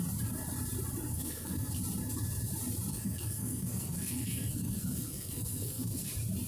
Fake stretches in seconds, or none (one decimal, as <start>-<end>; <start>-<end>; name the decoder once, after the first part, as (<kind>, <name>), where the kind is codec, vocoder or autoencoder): 1.1-1.7 (codec, SNAC); 2.9-6.1